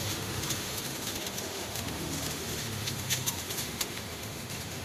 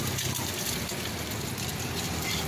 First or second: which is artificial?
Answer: first